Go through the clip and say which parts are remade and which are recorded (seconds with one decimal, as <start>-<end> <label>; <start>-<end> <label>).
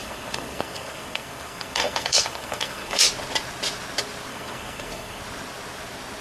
0.0-3.0 remade; 3.0-4.3 recorded; 4.3-5.2 remade; 5.2-6.2 recorded